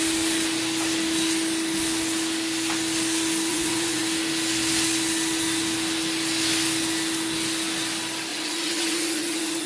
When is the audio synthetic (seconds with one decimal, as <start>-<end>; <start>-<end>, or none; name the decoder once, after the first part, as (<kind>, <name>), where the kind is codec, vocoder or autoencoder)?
3.5-4.0 (vocoder, Vocos); 8.3-9.7